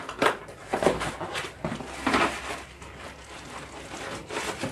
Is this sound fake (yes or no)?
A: no